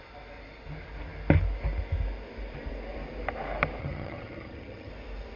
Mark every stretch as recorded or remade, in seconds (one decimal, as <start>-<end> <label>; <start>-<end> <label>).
0.0-3.8 recorded; 3.8-4.9 remade; 4.9-5.4 recorded